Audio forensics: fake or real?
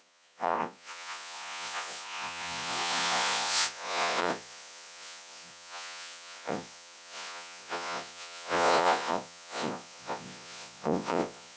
fake